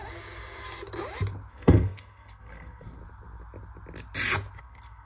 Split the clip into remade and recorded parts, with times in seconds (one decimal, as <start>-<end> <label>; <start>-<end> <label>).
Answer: 0.0-1.5 recorded; 1.5-3.0 remade; 3.0-4.6 recorded; 4.6-5.1 remade

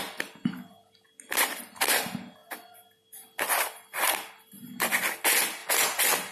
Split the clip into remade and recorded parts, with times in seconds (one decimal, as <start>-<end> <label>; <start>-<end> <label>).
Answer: 0.0-6.3 recorded

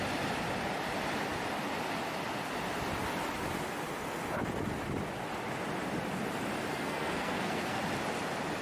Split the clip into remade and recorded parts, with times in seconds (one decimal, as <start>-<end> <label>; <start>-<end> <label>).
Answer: 0.0-6.7 recorded; 6.7-7.8 remade; 7.8-8.6 recorded

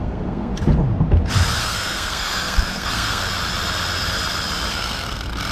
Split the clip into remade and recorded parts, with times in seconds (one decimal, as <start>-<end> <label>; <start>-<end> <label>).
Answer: 0.0-0.5 remade; 0.5-1.6 recorded; 1.6-3.2 remade; 3.2-4.7 recorded; 4.7-5.5 remade

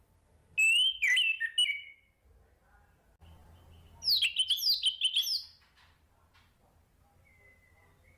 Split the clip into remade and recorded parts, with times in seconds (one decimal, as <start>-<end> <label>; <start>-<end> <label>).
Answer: 0.0-8.2 recorded

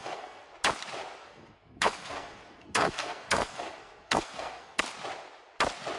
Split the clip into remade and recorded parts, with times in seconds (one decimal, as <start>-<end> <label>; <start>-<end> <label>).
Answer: 0.0-0.5 remade; 0.5-1.2 recorded; 1.2-4.8 remade; 4.8-6.0 recorded

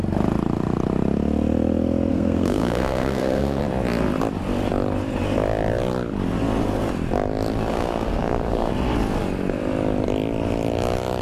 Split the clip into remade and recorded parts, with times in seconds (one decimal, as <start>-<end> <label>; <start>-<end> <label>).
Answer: 0.0-2.1 recorded; 2.1-3.6 remade; 3.6-7.7 recorded; 7.7-8.7 remade; 8.7-11.2 recorded

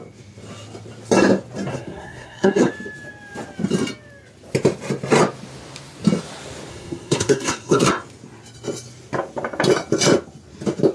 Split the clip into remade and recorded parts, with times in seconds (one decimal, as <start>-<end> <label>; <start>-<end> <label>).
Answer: 0.0-1.7 recorded; 1.7-2.7 remade; 2.7-6.7 recorded; 6.7-7.9 remade; 7.9-10.9 recorded